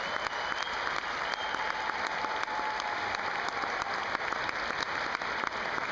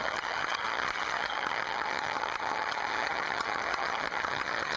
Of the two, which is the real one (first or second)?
first